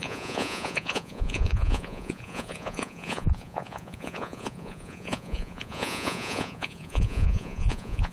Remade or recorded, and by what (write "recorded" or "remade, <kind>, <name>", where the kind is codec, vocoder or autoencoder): remade, vocoder, Vocos